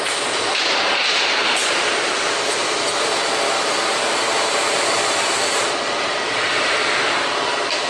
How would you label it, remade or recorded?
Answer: remade